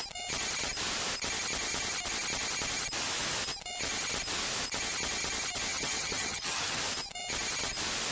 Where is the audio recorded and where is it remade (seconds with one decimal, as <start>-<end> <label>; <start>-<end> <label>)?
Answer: 0.0-5.7 recorded; 5.7-6.8 remade; 6.8-8.1 recorded

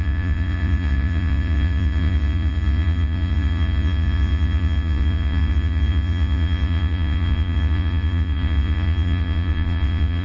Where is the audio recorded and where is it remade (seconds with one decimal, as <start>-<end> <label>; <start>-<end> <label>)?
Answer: 0.0-10.2 remade

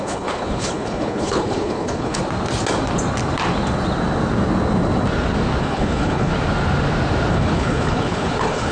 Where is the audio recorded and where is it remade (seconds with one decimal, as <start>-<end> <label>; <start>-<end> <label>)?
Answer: 0.0-2.2 remade; 2.2-5.6 recorded; 5.6-6.3 remade; 6.3-7.3 recorded; 7.3-8.7 remade

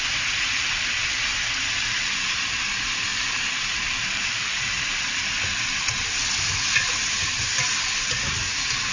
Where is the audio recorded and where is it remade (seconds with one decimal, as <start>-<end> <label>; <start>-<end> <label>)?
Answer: 0.0-3.1 recorded; 3.1-5.3 remade; 5.3-8.9 recorded

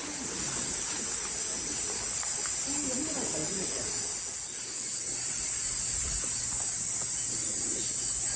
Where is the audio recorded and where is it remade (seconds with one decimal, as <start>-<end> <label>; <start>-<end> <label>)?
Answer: 0.0-8.4 recorded

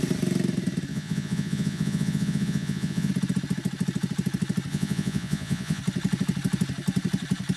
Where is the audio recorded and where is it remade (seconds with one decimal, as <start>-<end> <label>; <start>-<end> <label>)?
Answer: 0.0-0.9 recorded; 0.9-3.1 remade; 3.1-4.7 recorded; 4.7-5.8 remade; 5.8-7.6 recorded

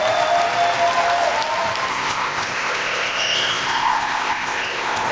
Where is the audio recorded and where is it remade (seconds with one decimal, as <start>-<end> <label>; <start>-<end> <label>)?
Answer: 0.0-1.9 recorded; 1.9-5.1 remade